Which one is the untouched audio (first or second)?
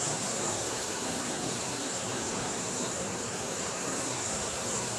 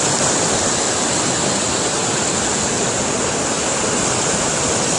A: second